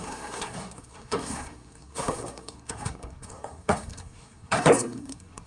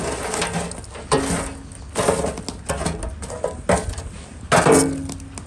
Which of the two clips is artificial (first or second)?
first